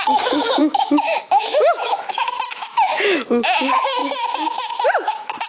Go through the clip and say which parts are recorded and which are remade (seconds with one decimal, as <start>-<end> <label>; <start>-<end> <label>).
0.0-5.5 remade